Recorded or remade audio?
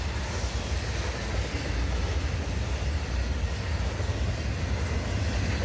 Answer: recorded